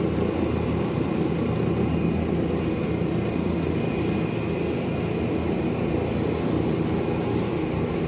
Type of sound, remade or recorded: recorded